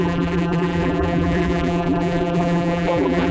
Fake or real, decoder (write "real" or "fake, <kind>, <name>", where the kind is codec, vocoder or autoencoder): fake, vocoder, BigVGAN v2